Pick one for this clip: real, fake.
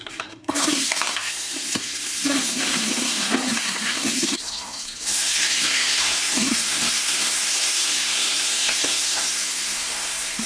fake